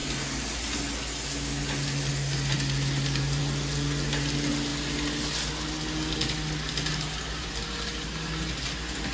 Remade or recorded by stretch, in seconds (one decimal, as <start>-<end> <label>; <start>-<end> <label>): 0.0-9.1 recorded